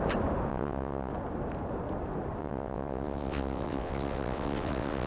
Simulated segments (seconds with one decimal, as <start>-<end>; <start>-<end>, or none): 0.5-1.1; 2.4-5.1